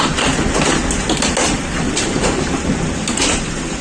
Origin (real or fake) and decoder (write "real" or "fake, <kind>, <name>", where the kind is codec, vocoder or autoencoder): real